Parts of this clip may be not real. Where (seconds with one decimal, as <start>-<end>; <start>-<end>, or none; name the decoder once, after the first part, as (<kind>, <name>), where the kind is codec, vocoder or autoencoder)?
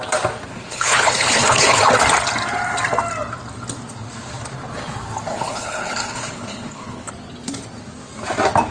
0.5-1.8 (codec, HILCodec); 5.3-7.1